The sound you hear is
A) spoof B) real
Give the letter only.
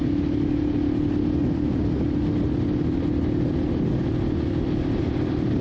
B